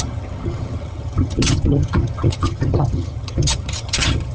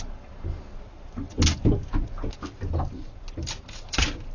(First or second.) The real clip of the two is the second